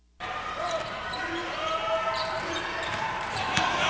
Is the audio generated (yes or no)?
yes